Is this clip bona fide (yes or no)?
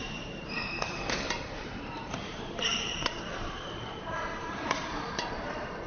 no